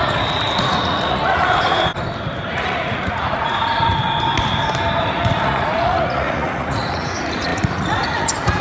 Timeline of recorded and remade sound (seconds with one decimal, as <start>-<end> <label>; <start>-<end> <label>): 0.0-1.9 remade; 1.9-2.5 recorded; 2.5-3.9 remade; 3.9-5.0 recorded; 5.0-8.6 remade